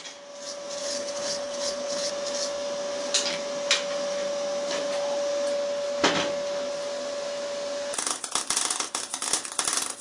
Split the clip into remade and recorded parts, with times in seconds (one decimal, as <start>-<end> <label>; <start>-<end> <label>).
0.0-0.8 recorded; 0.8-2.1 remade; 2.1-10.0 recorded